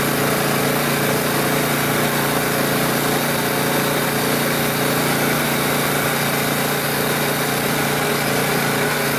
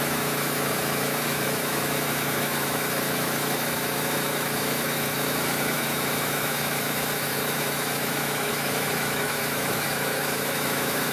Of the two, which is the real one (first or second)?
first